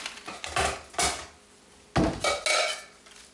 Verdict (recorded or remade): recorded